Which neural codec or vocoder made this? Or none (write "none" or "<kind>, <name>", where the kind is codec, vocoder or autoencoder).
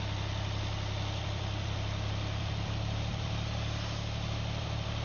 vocoder, BigVGAN v2